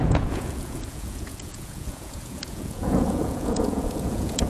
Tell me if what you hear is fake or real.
fake